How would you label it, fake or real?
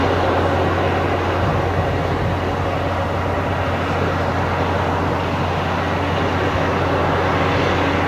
real